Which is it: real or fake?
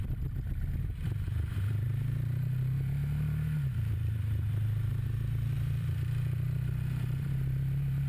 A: fake